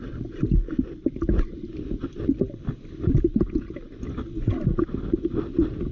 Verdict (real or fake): real